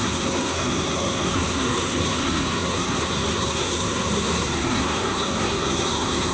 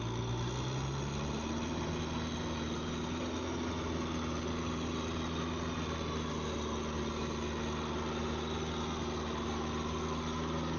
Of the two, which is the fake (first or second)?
first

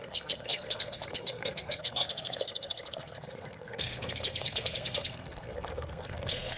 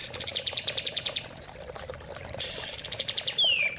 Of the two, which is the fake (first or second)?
first